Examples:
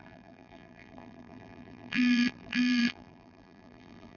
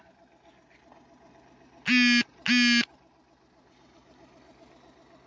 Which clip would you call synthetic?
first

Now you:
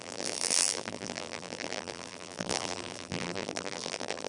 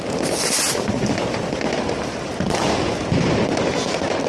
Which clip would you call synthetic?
first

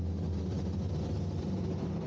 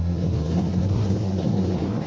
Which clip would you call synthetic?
second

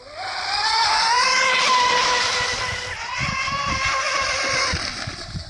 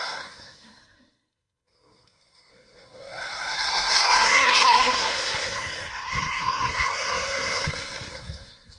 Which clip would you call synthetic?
second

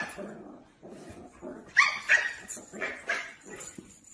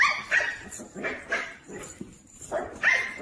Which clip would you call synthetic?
first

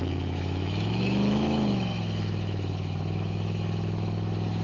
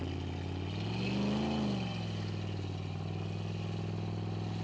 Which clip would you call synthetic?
first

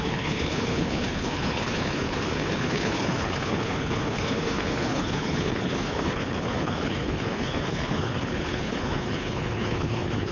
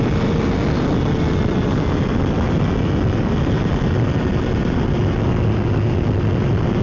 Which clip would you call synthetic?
first